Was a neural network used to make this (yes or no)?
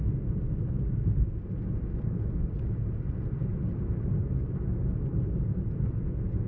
no